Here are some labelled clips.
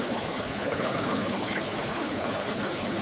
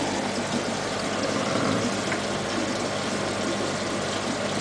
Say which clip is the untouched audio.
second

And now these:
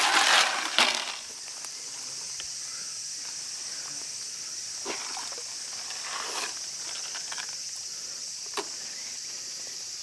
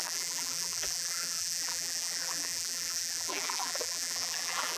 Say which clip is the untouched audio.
first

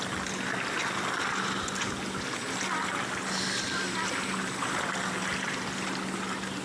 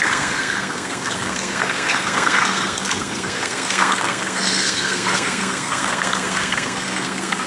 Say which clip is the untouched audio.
first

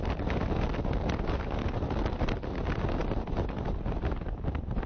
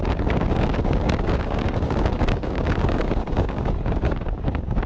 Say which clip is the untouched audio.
first